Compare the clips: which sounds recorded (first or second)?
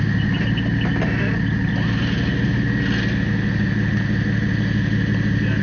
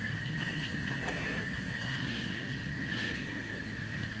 first